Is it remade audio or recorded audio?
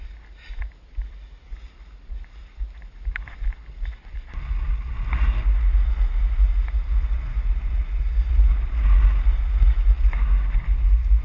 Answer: recorded